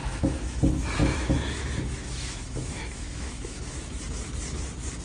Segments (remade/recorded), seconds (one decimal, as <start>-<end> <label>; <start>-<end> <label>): 0.0-0.6 remade; 0.6-1.0 recorded; 1.0-4.0 remade; 4.0-5.0 recorded